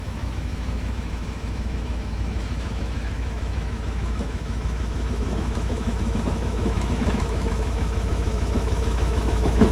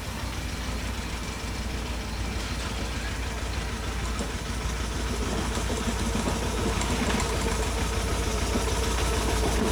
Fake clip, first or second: first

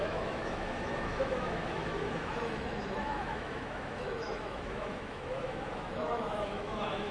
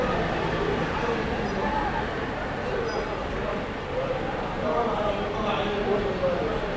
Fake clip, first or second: first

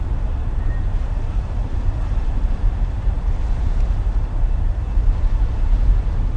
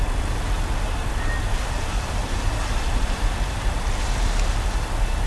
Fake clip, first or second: first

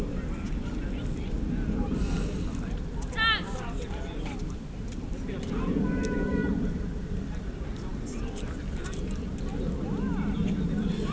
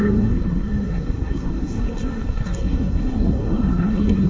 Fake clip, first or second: second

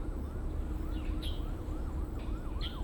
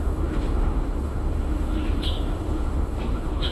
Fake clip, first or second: second